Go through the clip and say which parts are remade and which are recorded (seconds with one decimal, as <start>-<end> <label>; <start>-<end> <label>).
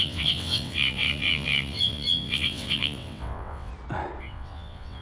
0.0-3.7 remade; 3.7-4.2 recorded; 4.2-5.0 remade